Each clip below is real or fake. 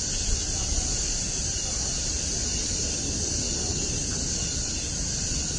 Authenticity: fake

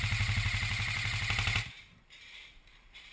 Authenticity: real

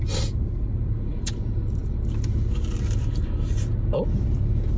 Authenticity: fake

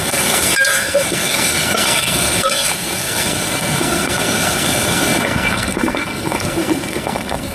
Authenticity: fake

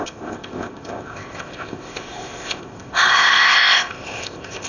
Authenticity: fake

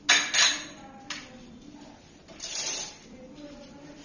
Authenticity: real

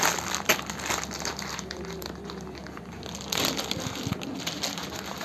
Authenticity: real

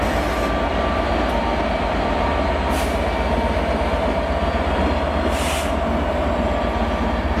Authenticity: real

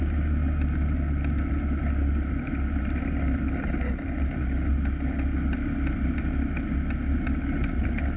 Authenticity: real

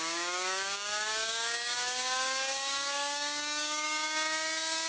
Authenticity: fake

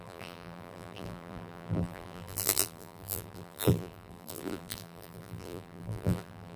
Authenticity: fake